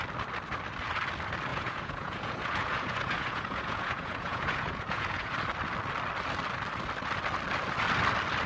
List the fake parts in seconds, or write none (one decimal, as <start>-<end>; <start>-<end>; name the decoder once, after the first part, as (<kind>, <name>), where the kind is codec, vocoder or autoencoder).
1.5-5.3 (vocoder, Vocos)